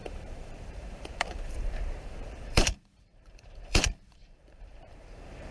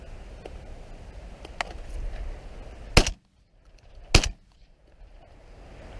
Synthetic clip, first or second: first